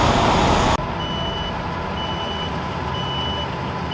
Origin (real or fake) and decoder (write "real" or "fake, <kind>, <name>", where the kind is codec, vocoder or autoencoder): real